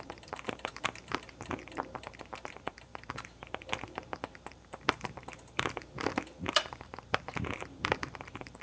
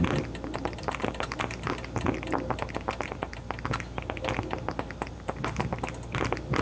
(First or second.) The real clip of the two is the second